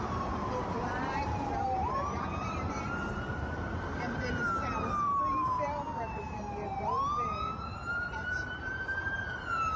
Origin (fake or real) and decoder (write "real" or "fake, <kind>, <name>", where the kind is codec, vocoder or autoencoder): fake, vocoder, BigVGAN v2